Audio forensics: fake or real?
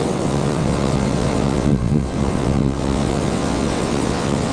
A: fake